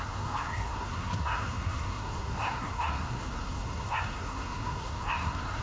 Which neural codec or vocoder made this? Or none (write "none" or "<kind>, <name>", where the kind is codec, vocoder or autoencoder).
codec, SNAC